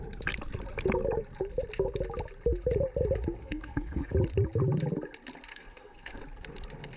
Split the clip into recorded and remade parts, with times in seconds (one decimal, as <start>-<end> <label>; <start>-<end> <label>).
0.0-3.4 recorded; 3.4-4.1 remade; 4.1-5.5 recorded; 5.5-6.2 remade; 6.2-7.0 recorded